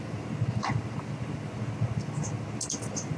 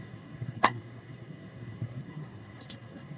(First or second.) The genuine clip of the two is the first